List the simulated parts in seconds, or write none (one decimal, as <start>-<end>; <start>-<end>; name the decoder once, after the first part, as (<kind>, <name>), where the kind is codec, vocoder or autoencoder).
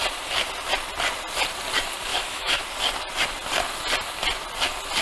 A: 2.1-2.6 (autoencoder, DAC-VAE)